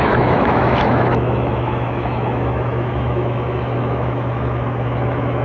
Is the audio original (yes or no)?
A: no